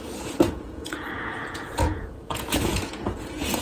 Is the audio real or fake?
fake